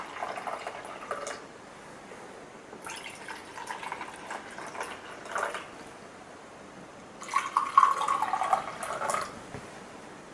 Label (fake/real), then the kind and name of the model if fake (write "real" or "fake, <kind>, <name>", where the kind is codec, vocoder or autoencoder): real